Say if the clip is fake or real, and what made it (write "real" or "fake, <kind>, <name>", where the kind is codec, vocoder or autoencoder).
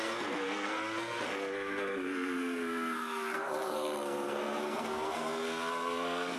fake, codec, SNAC